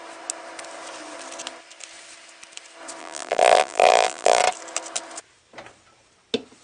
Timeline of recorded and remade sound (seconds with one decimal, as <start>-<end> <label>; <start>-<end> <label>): 0.0-3.0 recorded; 3.0-4.4 remade; 4.4-6.6 recorded